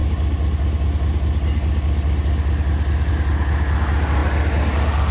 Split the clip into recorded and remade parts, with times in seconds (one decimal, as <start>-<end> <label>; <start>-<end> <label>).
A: 0.0-5.1 recorded